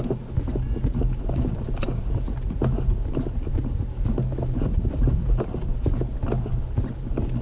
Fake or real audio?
real